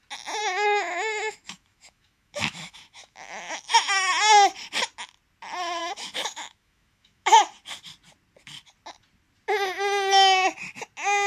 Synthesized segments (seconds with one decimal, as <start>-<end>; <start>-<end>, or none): 0.4-4.1; 5.8-7.4